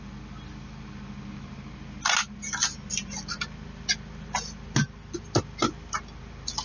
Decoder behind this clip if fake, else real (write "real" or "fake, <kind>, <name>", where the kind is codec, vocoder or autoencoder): real